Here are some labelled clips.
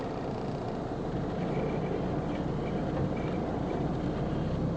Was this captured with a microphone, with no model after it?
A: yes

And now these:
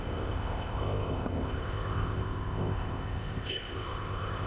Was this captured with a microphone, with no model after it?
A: no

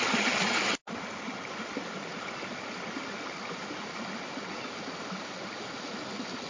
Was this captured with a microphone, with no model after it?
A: yes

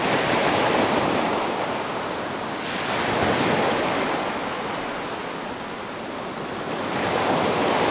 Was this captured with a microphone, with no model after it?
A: yes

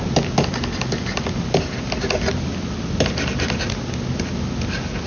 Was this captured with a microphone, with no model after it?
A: yes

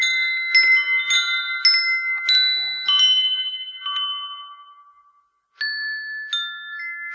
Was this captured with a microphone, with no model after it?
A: yes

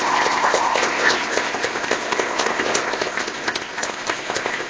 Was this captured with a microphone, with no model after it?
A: no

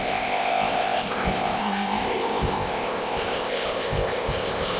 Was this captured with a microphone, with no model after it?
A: no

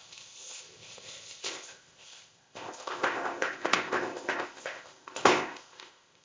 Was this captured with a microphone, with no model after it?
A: no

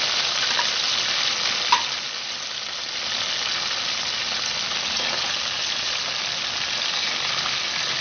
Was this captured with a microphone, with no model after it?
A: yes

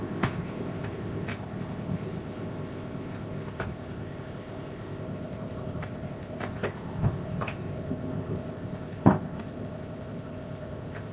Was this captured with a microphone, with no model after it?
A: no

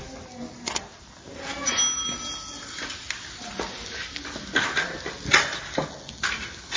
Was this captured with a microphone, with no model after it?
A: yes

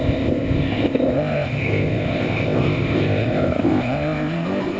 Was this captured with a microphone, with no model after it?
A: no